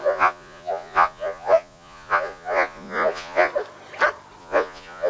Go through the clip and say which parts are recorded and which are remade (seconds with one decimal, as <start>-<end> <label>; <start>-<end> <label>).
0.0-3.5 remade; 3.5-4.4 recorded; 4.4-5.1 remade